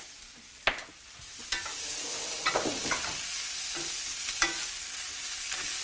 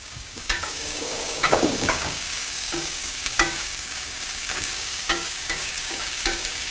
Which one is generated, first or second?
second